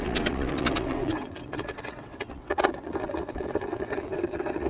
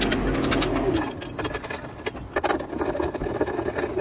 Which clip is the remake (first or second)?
first